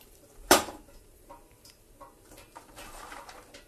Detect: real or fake fake